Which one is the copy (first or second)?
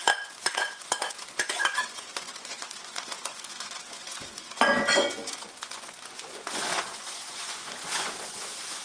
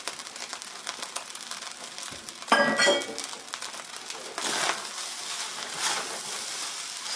first